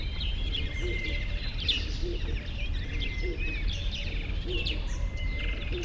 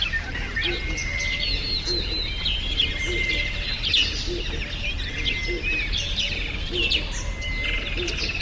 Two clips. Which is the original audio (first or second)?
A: second